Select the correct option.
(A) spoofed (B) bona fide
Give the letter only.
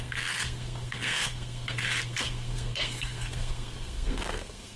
A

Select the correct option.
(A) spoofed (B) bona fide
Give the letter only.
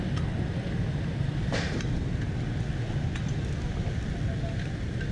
B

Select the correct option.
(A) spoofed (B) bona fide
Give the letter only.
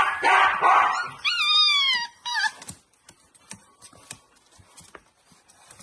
B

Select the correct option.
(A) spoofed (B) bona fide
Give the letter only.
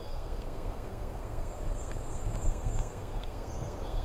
A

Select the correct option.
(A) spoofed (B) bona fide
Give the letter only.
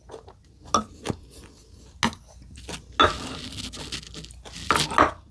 B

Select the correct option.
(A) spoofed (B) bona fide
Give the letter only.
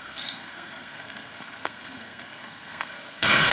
A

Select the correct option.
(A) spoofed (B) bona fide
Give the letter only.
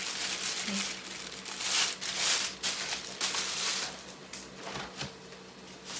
B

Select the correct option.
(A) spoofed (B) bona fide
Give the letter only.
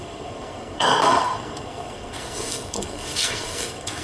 A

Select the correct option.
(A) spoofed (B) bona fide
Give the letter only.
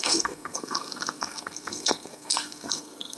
A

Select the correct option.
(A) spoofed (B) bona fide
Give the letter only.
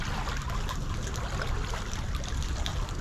B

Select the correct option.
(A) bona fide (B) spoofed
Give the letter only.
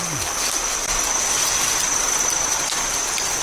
A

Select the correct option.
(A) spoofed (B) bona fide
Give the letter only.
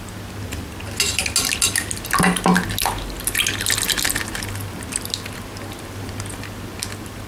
B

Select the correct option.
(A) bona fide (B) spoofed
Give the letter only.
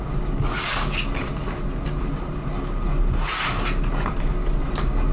A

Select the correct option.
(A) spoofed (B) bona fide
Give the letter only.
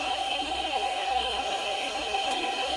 A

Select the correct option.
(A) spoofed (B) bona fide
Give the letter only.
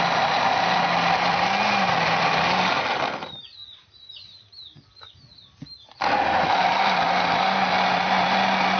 B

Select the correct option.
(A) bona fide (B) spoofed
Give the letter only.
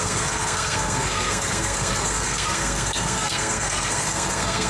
B